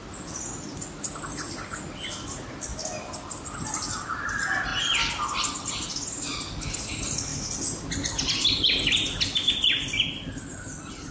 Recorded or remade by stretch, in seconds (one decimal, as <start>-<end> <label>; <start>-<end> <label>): 0.0-11.1 recorded